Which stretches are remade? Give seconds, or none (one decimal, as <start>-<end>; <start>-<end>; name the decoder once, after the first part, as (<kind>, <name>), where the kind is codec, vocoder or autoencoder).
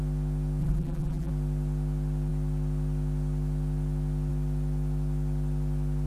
0.6-1.3 (vocoder, BigVGAN v2)